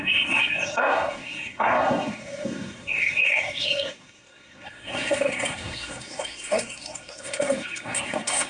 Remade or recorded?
remade